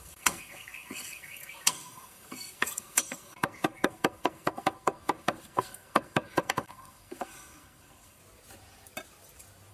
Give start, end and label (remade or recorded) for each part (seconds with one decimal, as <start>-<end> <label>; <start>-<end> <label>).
0.0-8.2 remade; 8.2-9.7 recorded